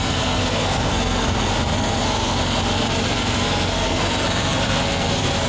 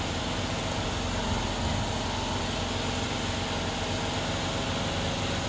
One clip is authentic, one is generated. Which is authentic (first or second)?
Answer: second